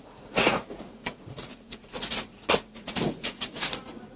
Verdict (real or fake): fake